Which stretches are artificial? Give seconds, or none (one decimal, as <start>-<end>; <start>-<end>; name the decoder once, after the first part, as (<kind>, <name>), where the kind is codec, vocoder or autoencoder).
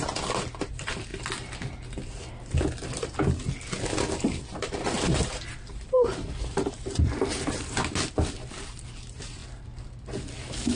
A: 0.0-1.1 (vocoder, BigVGAN v2); 4.4-9.4